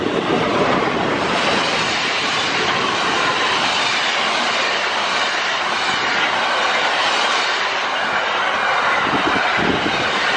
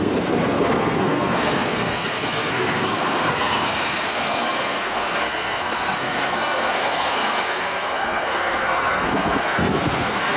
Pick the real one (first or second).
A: first